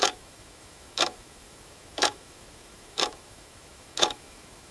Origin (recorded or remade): remade